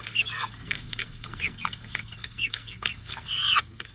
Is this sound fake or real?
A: fake